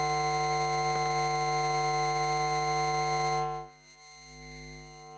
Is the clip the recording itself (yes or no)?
yes